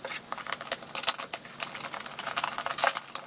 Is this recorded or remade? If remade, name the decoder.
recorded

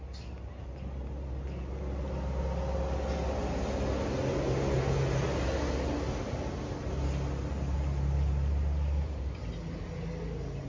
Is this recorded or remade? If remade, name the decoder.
recorded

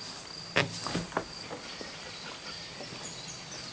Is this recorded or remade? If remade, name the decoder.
recorded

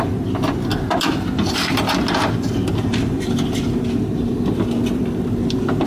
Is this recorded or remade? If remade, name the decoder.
recorded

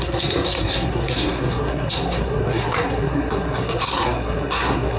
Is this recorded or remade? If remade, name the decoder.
remade, codec, SNAC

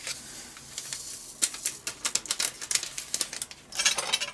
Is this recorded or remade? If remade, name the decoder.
recorded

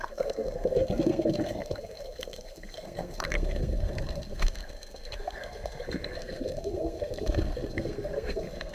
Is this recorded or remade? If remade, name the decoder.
remade, codec, SNAC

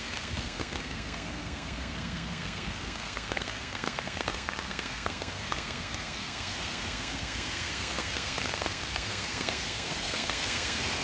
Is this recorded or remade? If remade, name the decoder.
remade, codec, SNAC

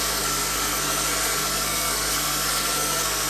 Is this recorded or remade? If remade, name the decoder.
remade, codec, SNAC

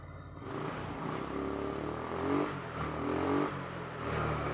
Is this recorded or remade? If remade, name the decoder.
recorded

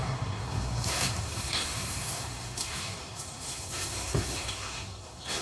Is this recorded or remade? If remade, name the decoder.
remade, codec, SNAC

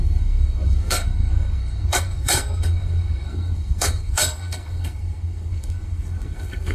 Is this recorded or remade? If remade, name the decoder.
remade, codec, SNAC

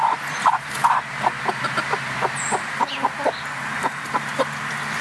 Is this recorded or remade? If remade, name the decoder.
recorded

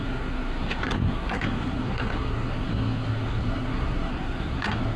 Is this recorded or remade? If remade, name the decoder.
remade, codec, SNAC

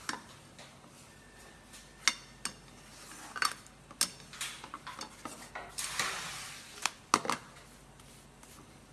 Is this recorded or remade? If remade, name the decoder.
recorded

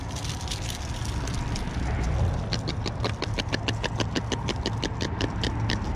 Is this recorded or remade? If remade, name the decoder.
recorded